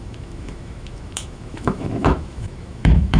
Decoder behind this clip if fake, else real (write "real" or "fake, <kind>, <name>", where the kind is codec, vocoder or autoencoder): fake, autoencoder, DAC-VAE